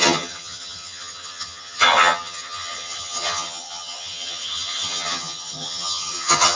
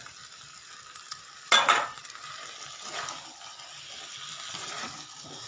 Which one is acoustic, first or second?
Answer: second